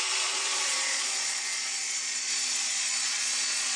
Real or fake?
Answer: fake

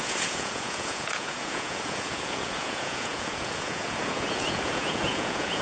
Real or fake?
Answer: fake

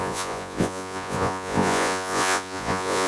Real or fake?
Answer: fake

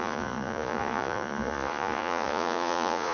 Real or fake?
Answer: fake